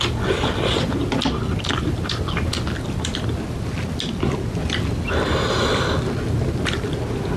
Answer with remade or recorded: recorded